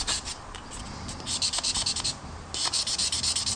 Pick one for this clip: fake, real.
real